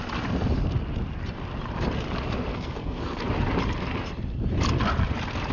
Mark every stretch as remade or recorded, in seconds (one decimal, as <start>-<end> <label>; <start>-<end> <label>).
0.0-2.5 recorded; 2.5-3.2 remade; 3.2-5.5 recorded

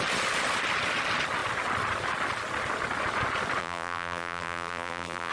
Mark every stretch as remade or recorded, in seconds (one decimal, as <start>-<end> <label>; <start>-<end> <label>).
0.0-3.6 recorded; 3.6-5.3 remade

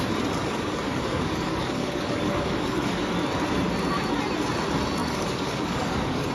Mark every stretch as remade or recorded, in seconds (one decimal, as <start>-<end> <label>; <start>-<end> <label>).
0.0-0.4 recorded; 0.4-3.1 remade; 3.1-5.0 recorded; 5.0-6.3 remade

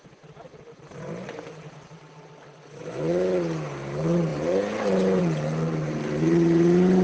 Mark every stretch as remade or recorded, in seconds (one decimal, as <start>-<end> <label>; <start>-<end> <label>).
0.0-7.0 recorded

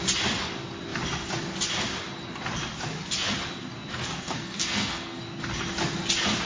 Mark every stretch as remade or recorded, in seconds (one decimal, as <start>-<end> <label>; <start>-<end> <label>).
0.0-3.9 recorded; 3.9-5.2 remade; 5.2-6.5 recorded

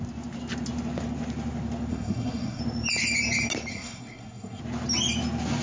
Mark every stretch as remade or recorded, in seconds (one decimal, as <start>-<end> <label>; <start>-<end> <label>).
0.0-1.9 recorded; 1.9-2.6 remade; 2.6-3.7 recorded; 3.7-4.6 remade; 4.6-5.6 recorded

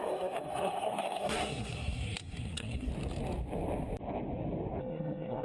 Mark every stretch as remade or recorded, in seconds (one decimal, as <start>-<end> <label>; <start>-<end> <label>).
0.0-2.9 remade; 2.9-4.8 recorded; 4.8-5.4 remade